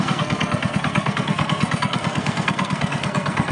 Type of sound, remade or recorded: remade